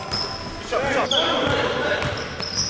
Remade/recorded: recorded